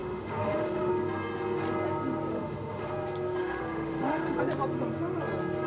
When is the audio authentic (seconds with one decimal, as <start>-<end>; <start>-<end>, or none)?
0.9-2.3; 2.9-3.4; 4.4-5.7